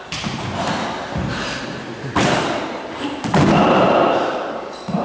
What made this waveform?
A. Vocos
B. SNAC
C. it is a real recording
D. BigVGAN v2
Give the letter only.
D